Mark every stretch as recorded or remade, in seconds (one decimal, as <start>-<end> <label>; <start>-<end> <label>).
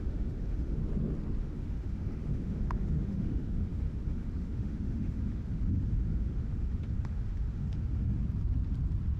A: 0.0-0.8 remade; 0.8-1.4 recorded; 1.4-8.2 remade; 8.2-9.2 recorded